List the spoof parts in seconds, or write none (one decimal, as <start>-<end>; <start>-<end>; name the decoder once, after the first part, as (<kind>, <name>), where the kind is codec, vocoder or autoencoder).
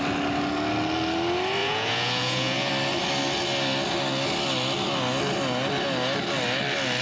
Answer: 1.6-2.7 (vocoder, Vocos)